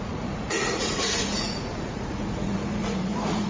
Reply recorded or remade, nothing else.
remade